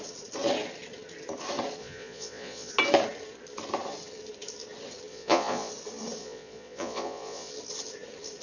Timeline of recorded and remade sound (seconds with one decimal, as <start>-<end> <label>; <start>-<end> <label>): 0.0-1.8 recorded; 1.8-2.7 remade; 2.7-5.1 recorded; 5.1-5.7 remade; 5.7-6.2 recorded; 6.2-7.5 remade; 7.5-8.4 recorded